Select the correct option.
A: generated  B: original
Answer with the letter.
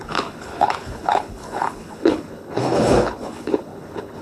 A